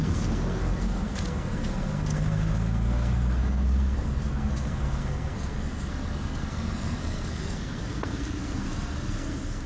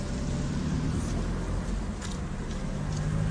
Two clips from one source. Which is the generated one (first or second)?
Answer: first